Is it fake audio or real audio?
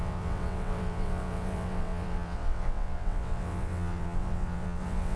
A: fake